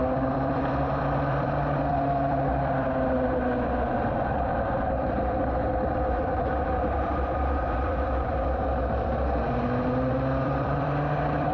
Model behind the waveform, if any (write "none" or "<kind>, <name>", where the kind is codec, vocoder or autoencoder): vocoder, BigVGAN v2